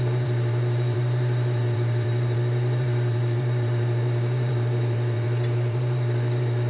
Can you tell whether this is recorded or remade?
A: remade